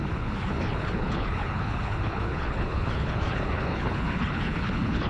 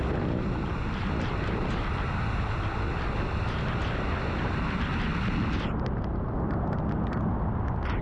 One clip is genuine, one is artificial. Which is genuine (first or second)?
second